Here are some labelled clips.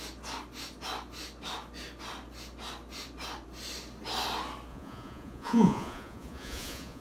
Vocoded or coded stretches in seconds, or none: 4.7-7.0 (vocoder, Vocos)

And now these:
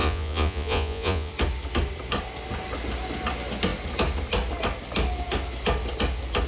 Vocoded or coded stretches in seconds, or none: 0.0-1.3 (vocoder, Vocos)

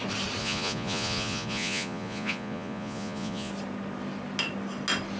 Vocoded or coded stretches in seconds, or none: 0.4-3.5 (vocoder, Vocos)

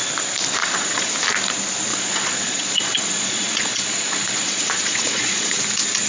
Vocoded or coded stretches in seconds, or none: 0.6-1.1 (vocoder, Vocos); 1.9-5.6

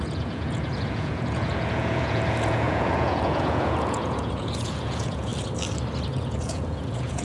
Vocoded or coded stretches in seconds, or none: 0.0-5.3 (vocoder, Vocos); 6.1-7.2

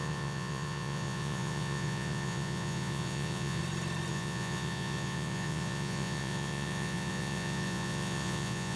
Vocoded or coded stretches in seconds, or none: 0.0-3.6 (vocoder, Vocos); 4.1-8.8

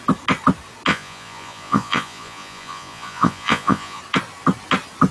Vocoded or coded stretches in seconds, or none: 0.9-4.0 (vocoder, Vocos)